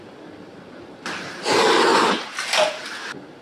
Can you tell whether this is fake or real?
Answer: real